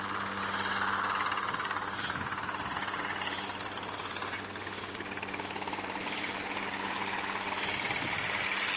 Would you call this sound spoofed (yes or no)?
no